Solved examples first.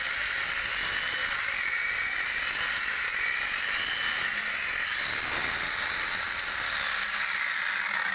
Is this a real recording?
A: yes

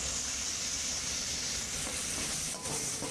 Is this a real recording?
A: yes